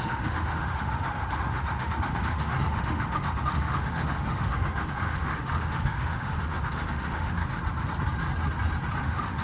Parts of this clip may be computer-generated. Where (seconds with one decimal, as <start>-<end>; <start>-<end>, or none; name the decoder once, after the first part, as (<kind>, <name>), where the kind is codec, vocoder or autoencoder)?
0.0-7.4 (autoencoder, DAC-VAE); 9.0-9.4